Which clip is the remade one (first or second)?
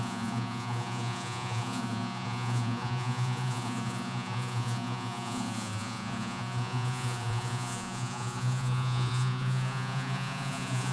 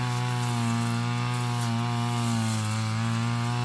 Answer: first